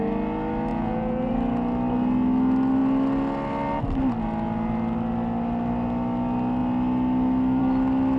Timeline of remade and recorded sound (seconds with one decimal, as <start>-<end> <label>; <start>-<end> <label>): 0.0-0.7 recorded; 0.7-1.3 remade; 1.3-8.2 recorded

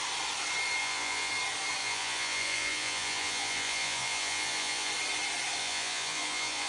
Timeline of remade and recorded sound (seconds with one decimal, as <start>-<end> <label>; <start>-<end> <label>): 0.0-0.8 recorded; 0.8-1.3 remade; 1.3-1.8 recorded; 1.8-4.9 remade; 4.9-5.6 recorded; 5.6-6.7 remade